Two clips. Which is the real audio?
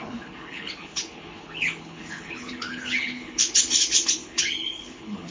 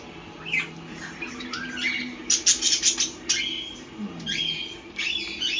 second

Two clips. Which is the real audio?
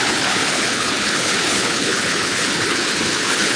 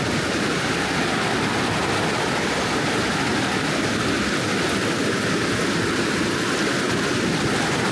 second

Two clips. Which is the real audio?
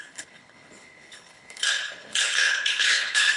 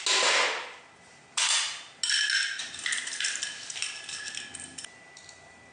second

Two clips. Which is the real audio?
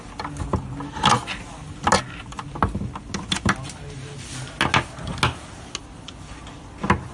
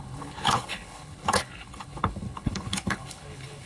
first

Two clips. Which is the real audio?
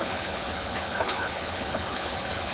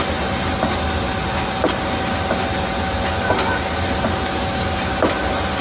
second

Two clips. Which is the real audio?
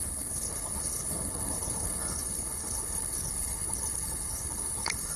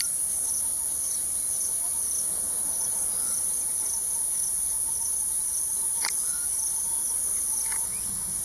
second